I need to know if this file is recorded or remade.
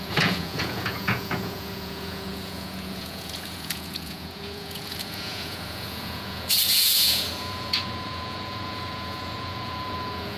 remade